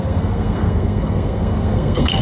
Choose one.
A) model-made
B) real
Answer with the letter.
A